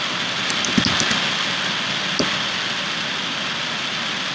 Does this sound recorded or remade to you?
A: recorded